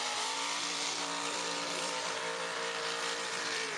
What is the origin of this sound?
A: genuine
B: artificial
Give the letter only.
B